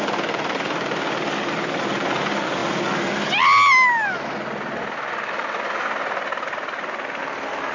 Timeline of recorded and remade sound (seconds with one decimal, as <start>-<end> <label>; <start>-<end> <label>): 0.0-7.7 recorded